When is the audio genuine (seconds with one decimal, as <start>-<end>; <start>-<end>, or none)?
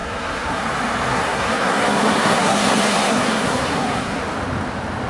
0.6-1.1; 4.2-5.1